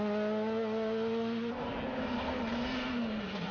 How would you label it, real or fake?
real